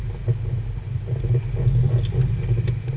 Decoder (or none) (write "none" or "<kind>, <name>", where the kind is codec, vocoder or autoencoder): none